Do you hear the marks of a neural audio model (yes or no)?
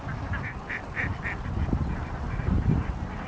no